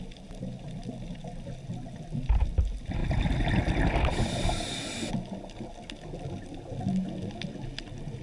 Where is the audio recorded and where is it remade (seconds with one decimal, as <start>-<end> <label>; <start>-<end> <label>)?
0.0-8.2 recorded